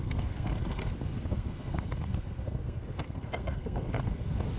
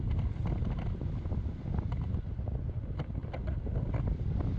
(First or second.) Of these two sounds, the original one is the second